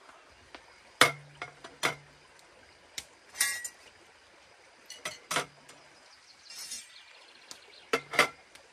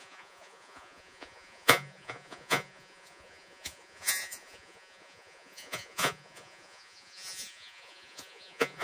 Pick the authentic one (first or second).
first